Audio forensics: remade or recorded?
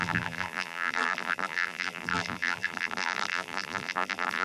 remade